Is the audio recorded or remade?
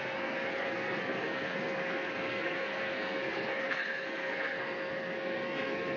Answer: remade